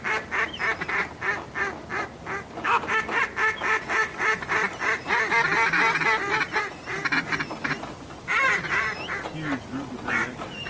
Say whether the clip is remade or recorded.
recorded